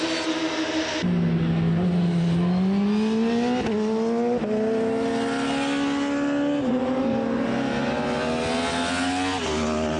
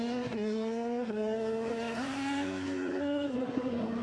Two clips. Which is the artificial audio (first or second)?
second